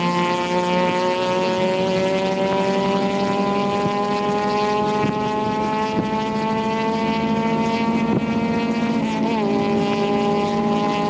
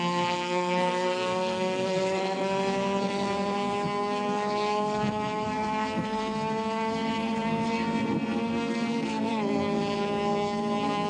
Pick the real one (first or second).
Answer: first